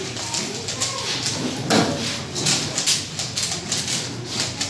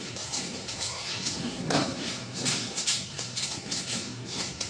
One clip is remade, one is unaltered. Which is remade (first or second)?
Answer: second